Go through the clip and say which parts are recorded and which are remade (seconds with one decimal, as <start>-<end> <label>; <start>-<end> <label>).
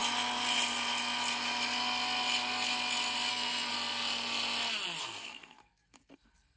0.0-3.3 recorded; 3.3-3.7 remade; 3.7-5.0 recorded; 5.0-6.6 remade